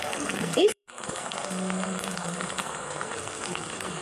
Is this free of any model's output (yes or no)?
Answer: no